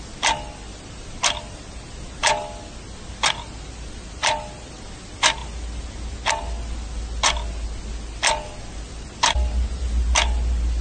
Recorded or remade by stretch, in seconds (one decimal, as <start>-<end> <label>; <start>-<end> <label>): 0.0-10.8 recorded